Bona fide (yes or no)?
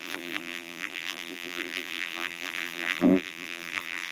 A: no